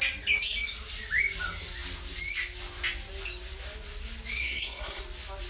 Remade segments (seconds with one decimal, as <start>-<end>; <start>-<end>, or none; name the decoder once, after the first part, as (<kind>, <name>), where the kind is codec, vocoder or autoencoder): 4.4-5.0 (codec, SNAC)